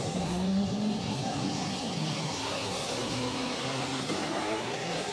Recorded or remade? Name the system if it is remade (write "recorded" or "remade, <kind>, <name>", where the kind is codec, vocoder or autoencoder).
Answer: remade, codec, SNAC